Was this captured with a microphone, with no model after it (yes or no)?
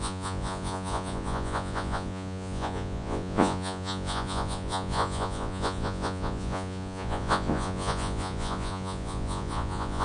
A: no